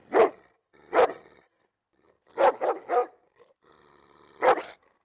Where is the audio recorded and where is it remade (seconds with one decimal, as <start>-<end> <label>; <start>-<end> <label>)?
0.0-5.0 recorded